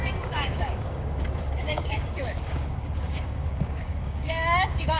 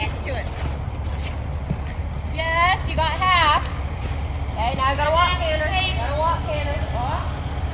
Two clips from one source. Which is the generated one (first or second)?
first